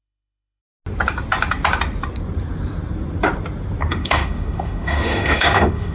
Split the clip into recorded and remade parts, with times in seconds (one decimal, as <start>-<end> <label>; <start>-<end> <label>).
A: 0.0-0.6 remade; 0.6-3.9 recorded; 3.9-5.9 remade